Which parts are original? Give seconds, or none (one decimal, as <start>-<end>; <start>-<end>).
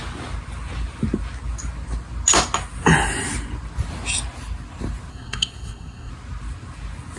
0.0-5.1; 6.1-7.2